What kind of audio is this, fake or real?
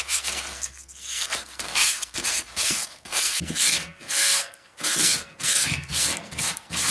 fake